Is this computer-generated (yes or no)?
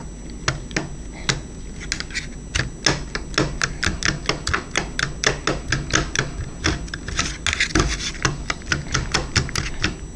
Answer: no